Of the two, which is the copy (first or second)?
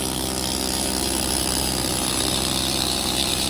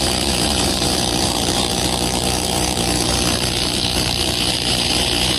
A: second